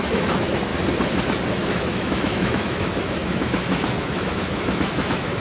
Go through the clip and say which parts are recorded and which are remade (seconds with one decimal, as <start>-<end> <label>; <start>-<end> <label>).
0.0-0.7 remade; 0.7-1.5 recorded; 1.5-5.4 remade